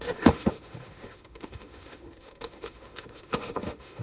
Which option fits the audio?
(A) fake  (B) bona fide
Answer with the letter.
A